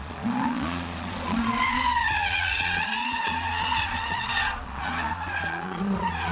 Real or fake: fake